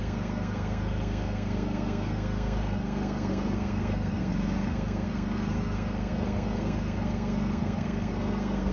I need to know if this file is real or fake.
fake